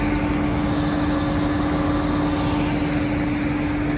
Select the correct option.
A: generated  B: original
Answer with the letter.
B